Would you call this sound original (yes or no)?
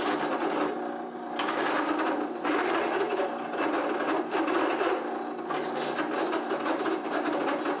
yes